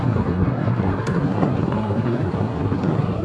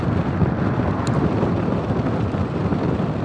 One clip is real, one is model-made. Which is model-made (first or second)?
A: first